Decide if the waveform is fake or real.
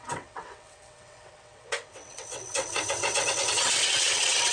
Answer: fake